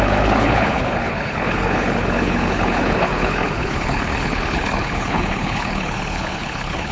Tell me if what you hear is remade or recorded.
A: remade